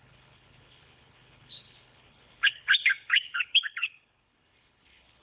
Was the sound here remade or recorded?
remade